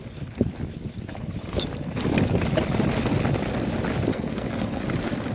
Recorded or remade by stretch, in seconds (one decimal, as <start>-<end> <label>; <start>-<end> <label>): 0.0-4.1 recorded; 4.1-4.8 remade; 4.8-5.3 recorded

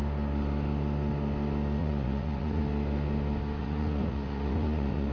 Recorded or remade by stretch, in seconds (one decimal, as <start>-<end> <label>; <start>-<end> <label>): 0.0-1.8 recorded; 1.8-2.6 remade; 2.6-3.6 recorded; 3.6-5.1 remade